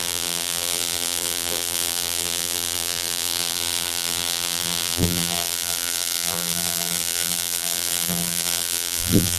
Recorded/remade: remade